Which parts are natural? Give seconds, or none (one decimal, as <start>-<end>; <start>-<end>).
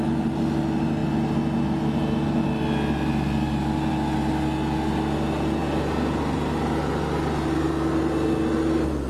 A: 0.0-9.1